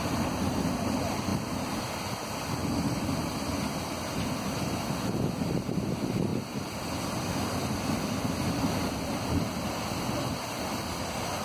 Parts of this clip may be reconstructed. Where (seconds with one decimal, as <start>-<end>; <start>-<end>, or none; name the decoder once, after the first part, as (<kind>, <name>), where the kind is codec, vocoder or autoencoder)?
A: 0.0-2.6 (vocoder, BigVGAN v2); 5.5-11.4